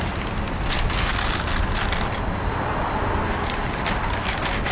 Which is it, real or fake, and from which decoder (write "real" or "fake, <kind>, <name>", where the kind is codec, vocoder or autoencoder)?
real